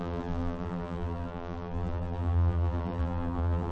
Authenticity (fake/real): fake